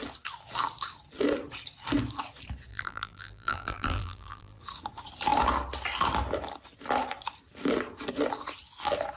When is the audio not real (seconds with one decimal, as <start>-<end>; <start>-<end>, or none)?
2.7-4.6